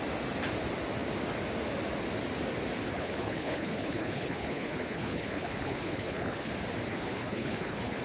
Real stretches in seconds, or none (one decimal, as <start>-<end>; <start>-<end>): 0.0-2.9; 6.5-6.9